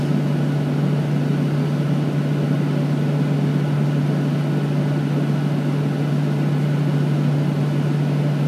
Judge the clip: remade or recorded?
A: recorded